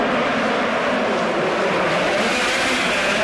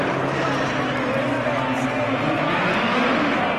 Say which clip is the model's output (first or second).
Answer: first